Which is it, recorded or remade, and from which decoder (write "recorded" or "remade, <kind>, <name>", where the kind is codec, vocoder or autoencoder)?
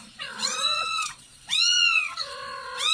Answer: remade, vocoder, Vocos